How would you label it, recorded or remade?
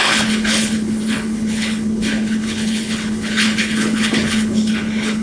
remade